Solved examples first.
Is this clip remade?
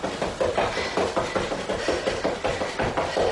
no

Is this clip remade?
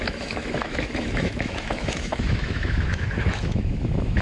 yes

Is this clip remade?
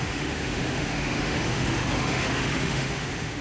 yes